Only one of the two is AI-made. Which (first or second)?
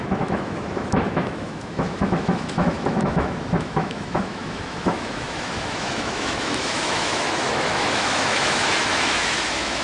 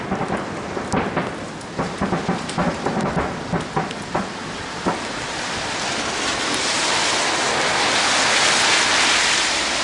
first